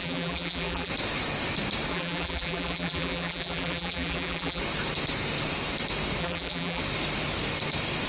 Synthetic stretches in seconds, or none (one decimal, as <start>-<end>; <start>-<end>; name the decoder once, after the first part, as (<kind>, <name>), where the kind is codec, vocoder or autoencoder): 0.0-0.9 (vocoder, BigVGAN v2); 1.9-4.6; 6.2-6.8